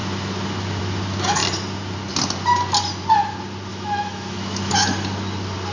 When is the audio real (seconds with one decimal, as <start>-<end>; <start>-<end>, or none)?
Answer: 0.0-3.7; 4.7-5.7